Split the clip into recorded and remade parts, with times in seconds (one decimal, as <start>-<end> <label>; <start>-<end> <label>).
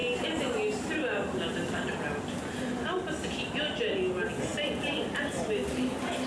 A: 0.0-6.3 recorded